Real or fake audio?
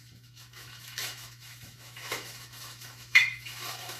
fake